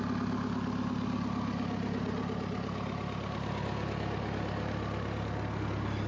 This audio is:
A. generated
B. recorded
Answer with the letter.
B